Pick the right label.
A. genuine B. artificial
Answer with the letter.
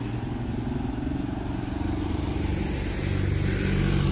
A